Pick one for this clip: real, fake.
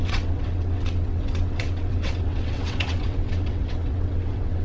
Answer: fake